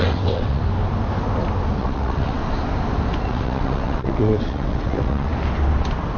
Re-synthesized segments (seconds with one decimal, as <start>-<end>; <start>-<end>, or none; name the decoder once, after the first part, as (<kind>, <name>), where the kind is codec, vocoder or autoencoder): 0.0-0.6 (vocoder, WaveNeXt); 1.8-2.4; 3.2-5.3

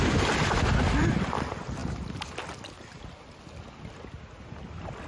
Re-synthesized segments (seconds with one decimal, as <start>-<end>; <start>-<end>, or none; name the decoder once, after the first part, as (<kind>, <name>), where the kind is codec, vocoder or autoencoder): none

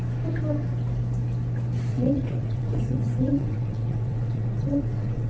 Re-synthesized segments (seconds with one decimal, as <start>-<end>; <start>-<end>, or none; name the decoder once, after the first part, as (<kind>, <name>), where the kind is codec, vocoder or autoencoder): 1.9-5.3 (vocoder, WaveNeXt)

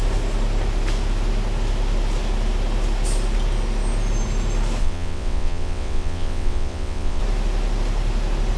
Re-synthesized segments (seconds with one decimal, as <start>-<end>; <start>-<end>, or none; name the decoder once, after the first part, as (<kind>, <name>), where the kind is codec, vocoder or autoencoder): 4.8-7.2 (vocoder, WaveNeXt)

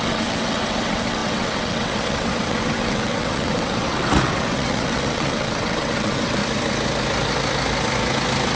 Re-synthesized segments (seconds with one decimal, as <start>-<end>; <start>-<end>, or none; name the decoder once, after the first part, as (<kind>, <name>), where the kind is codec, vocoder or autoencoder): 0.0-6.4 (vocoder, WaveNeXt)

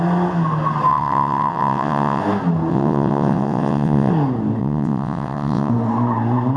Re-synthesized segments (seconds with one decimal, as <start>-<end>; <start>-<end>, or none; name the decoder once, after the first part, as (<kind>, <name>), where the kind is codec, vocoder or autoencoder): 0.9-2.2 (vocoder, WaveNeXt); 2.7-4.1; 4.6-5.7

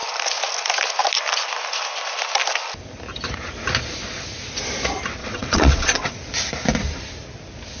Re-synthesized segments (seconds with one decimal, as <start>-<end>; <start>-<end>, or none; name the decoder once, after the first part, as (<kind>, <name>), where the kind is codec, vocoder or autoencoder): 5.2-6.1 (vocoder, WaveNeXt)